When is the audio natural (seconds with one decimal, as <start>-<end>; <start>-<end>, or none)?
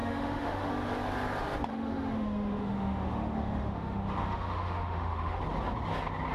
0.7-1.7; 5.4-6.3